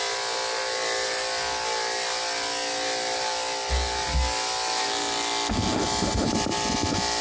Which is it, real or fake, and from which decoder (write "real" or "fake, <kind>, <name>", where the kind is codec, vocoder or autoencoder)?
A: real